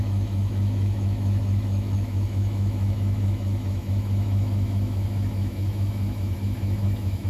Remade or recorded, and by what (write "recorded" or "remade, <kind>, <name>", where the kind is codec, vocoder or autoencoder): remade, autoencoder, DAC-VAE